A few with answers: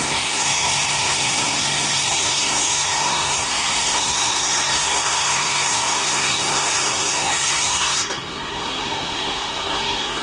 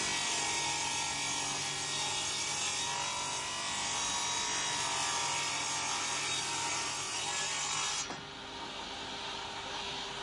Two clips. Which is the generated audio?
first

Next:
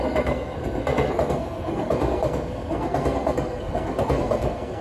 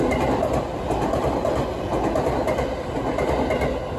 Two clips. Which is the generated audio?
first